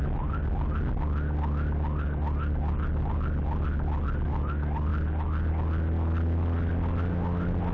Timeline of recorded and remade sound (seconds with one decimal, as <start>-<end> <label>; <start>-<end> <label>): 0.0-7.7 recorded